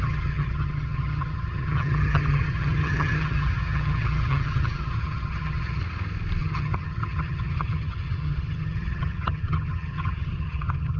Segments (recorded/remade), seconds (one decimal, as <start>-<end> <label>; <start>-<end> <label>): 0.0-5.8 remade; 5.8-6.4 recorded; 6.4-11.0 remade